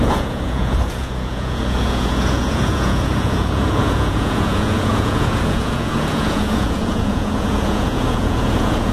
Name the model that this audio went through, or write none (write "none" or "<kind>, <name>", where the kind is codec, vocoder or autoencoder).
vocoder, Vocos